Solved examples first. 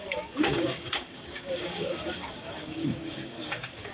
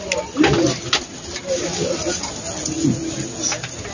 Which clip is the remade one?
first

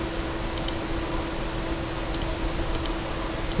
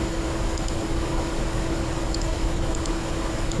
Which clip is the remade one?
second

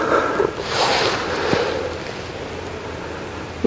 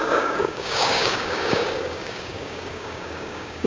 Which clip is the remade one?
second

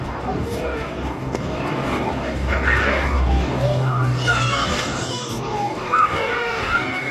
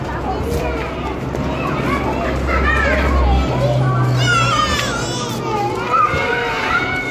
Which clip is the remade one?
first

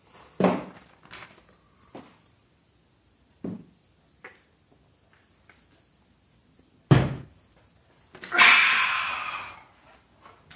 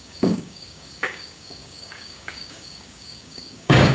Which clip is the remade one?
second